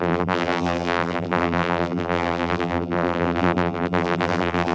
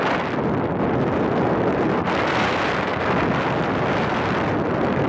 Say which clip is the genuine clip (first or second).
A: second